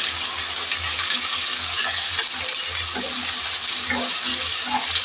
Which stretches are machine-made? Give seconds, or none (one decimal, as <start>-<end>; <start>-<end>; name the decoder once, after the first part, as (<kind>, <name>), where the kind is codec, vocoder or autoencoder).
0.9-2.1 (codec, DAC); 4.3-5.0